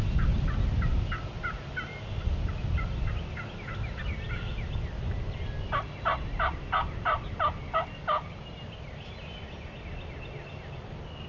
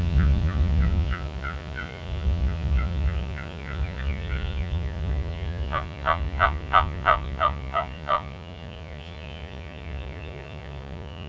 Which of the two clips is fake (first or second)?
second